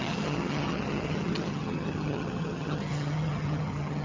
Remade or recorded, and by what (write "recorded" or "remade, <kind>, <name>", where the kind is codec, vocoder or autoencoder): remade, vocoder, HiFi-GAN